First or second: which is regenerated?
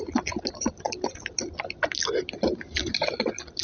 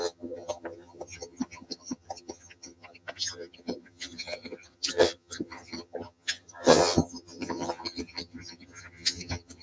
second